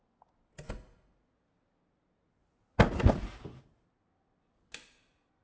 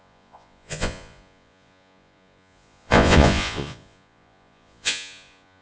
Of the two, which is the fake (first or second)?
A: second